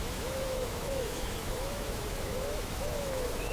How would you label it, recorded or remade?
remade